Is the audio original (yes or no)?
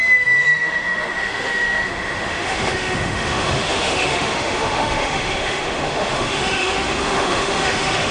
no